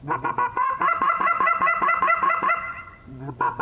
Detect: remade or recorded remade